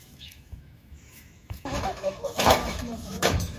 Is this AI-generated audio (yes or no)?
yes